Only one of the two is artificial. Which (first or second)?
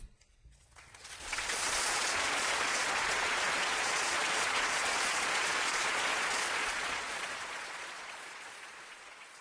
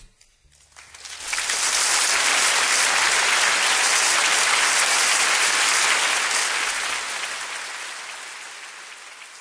first